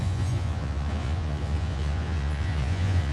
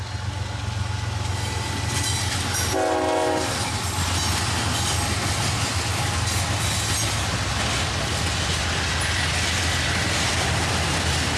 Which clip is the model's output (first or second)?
first